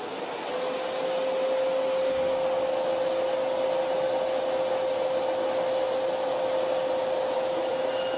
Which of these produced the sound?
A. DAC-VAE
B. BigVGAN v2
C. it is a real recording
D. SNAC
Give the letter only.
C